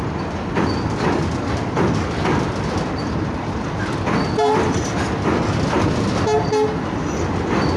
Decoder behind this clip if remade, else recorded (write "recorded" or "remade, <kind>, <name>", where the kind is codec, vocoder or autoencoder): recorded